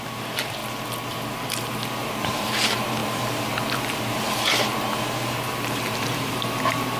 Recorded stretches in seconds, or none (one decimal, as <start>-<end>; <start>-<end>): 0.6-1.1